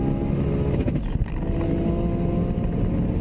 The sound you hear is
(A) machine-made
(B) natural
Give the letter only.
B